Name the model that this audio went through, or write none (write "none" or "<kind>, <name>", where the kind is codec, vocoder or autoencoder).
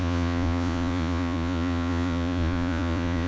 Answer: vocoder, Vocos